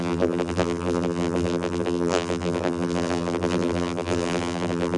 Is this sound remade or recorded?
remade